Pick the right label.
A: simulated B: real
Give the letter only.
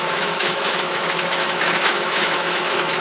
A